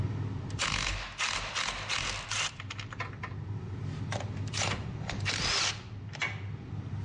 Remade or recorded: recorded